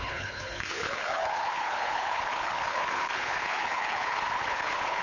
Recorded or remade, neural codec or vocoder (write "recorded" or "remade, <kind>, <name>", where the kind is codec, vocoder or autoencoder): remade, codec, HILCodec